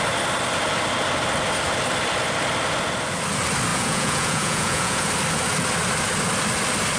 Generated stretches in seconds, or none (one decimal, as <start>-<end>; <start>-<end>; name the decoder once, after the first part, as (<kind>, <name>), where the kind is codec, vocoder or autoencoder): 3.7-5.1 (vocoder, Vocos)